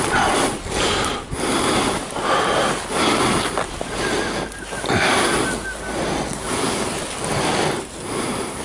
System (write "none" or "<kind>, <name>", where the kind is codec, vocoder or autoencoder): none